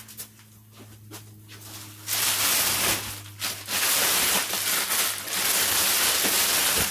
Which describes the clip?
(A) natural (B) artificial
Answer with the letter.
A